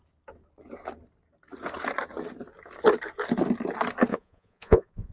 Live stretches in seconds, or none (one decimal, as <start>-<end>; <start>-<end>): 0.0-4.1